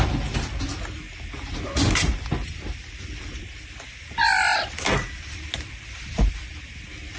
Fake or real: real